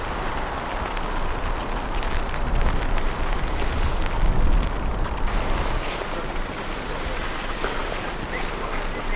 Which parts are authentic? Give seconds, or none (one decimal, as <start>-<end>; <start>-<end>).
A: 0.0-4.9; 7.8-9.2